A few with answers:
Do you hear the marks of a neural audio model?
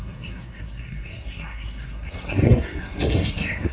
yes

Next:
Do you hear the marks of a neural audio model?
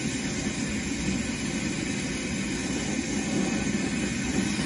no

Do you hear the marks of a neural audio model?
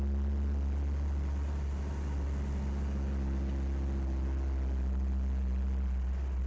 no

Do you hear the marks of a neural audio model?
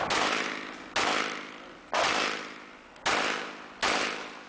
no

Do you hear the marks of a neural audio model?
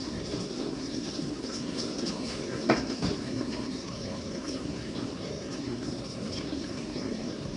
yes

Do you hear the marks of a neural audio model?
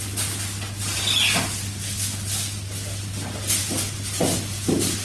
no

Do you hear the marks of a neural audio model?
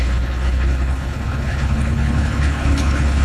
yes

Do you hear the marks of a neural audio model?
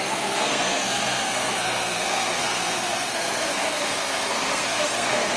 yes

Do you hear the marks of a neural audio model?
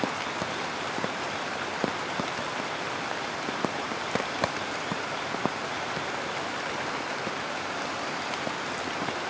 yes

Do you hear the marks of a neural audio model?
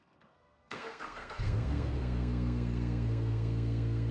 yes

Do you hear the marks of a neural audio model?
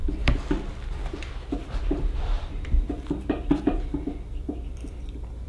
yes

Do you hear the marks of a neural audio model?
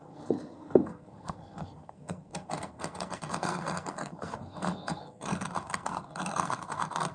yes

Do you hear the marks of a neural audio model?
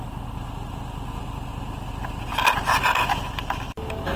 no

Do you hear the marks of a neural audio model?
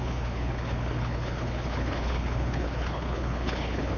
yes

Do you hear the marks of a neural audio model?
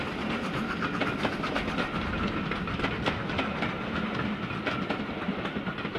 no